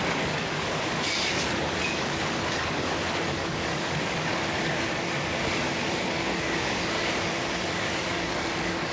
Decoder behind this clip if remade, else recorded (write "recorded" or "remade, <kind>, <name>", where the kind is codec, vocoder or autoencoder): remade, codec, DAC